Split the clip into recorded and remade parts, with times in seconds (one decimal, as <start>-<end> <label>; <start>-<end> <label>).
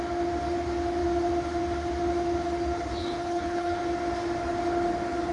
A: 0.0-3.0 recorded; 3.0-3.8 remade; 3.8-5.3 recorded